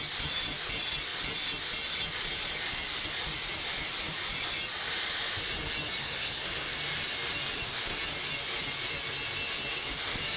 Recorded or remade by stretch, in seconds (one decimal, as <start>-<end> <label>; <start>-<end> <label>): 0.0-6.0 recorded; 6.0-6.7 remade; 6.7-10.4 recorded